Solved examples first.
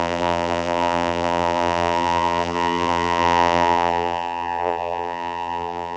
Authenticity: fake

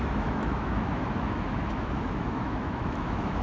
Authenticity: fake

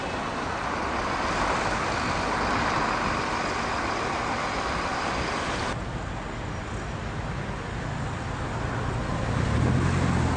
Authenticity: real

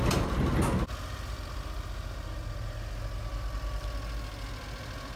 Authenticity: real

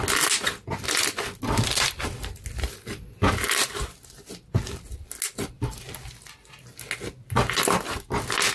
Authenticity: real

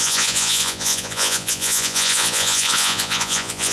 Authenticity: fake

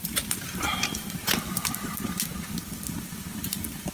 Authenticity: real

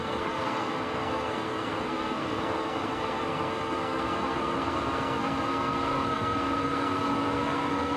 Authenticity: fake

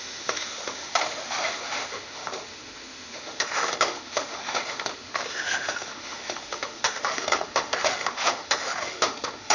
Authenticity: fake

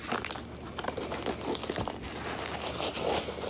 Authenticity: real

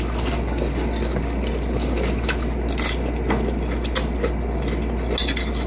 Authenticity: real